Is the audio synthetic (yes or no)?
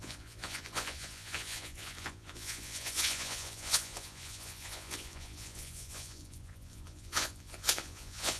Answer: yes